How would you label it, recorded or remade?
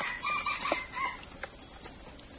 recorded